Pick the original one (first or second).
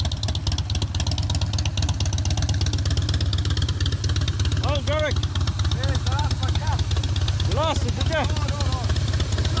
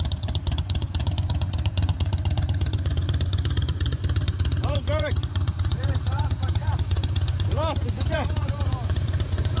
first